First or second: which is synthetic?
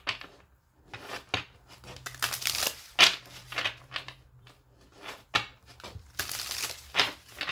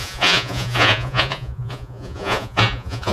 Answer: second